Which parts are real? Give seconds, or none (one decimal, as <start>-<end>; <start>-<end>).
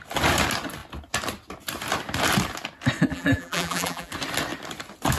0.0-3.1; 4.1-5.2